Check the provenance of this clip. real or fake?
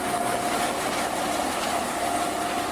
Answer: real